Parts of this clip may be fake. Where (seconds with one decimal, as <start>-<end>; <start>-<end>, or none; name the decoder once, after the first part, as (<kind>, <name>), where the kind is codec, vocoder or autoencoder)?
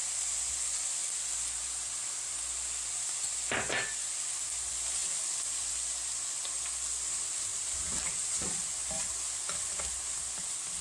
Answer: none